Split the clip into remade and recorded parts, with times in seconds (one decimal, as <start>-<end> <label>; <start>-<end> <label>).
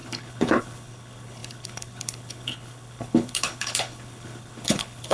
0.0-5.1 remade